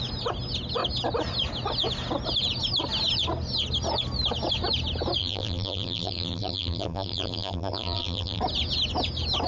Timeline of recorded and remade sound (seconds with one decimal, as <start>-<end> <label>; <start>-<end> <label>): 0.0-5.2 recorded; 5.2-8.4 remade; 8.4-9.5 recorded